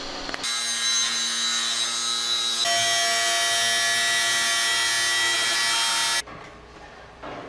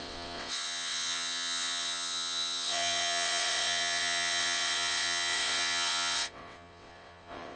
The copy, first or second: second